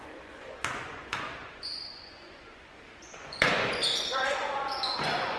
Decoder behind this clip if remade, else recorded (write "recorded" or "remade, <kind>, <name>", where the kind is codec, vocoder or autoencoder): remade, vocoder, Vocos